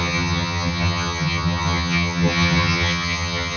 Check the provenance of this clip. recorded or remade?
remade